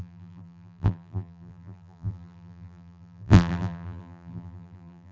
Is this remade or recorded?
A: remade